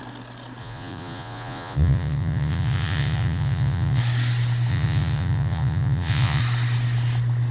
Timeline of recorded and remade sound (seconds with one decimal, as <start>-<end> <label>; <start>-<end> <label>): 0.0-0.6 recorded; 0.6-4.0 remade; 4.0-4.7 recorded; 4.7-6.4 remade; 6.4-7.5 recorded